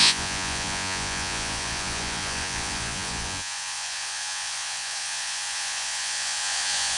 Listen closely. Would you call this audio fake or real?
fake